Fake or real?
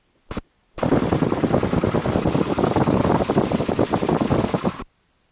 real